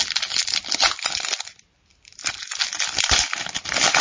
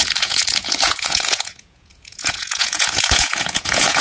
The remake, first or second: second